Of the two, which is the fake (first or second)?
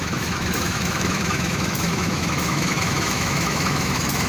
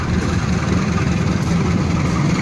first